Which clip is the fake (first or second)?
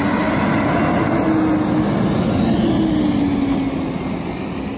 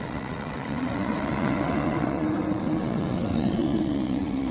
second